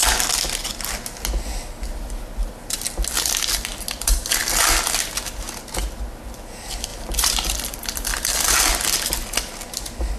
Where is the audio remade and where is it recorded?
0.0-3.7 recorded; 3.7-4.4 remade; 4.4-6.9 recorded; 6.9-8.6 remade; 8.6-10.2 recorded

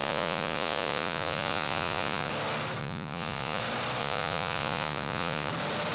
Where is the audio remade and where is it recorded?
0.0-2.3 remade; 2.3-2.8 recorded; 2.8-3.6 remade; 3.6-4.0 recorded; 4.0-5.5 remade; 5.5-5.9 recorded

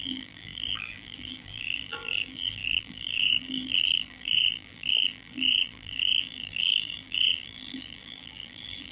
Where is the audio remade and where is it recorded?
0.0-8.9 remade

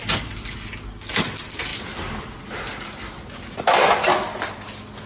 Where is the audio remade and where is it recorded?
0.0-5.1 recorded

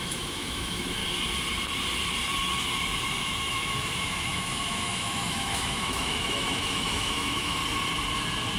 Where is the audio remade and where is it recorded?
0.0-1.0 remade; 1.0-3.2 recorded; 3.2-7.6 remade; 7.6-8.6 recorded

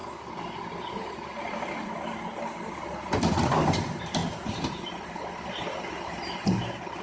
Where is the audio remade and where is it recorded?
0.0-7.0 recorded

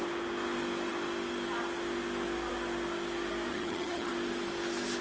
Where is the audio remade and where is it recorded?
0.0-3.5 recorded; 3.5-4.1 remade; 4.1-5.0 recorded